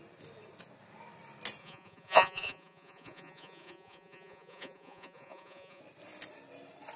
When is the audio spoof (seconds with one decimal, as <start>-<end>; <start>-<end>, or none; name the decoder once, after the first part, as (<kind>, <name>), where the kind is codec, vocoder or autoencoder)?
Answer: 1.6-5.8 (vocoder, Vocos)